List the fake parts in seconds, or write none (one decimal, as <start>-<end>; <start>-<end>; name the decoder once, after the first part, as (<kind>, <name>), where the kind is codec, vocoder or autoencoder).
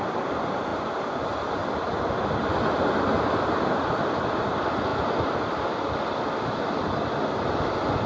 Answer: none